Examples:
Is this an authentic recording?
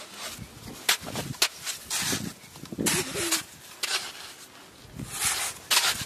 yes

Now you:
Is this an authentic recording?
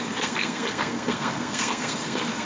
no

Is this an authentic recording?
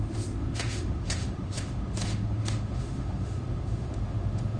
no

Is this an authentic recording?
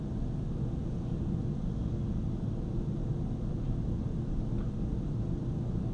yes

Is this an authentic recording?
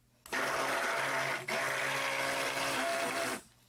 yes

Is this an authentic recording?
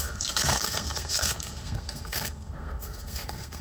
no